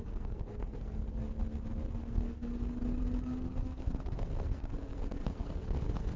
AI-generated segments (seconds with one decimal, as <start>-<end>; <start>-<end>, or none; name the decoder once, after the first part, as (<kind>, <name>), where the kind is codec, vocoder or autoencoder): 0.0-1.2 (codec, SNAC); 2.0-2.5; 3.0-6.2